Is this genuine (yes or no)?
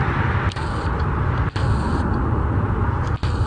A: yes